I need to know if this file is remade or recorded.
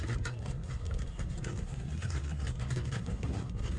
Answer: remade